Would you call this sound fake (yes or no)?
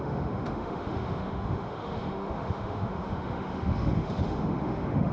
yes